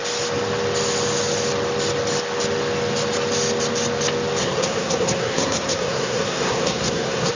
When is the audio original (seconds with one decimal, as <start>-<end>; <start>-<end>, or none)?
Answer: 0.0-4.4